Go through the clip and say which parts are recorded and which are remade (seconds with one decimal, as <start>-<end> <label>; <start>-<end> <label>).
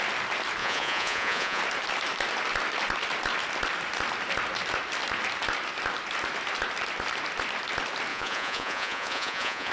0.0-0.6 recorded; 0.6-1.6 remade; 1.6-8.1 recorded; 8.1-9.7 remade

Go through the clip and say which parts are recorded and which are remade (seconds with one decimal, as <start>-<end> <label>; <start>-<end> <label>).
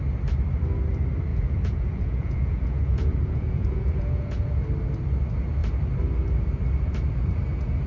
0.0-1.3 recorded; 1.3-4.6 remade; 4.6-7.9 recorded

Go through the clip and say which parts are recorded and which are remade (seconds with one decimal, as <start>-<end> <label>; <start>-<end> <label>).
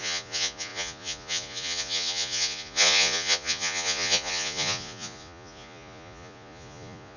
0.0-7.2 remade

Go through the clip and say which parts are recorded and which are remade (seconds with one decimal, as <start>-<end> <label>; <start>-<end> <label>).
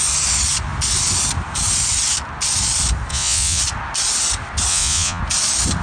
0.0-3.1 recorded; 3.1-3.6 remade; 3.6-4.7 recorded; 4.7-5.2 remade; 5.2-5.8 recorded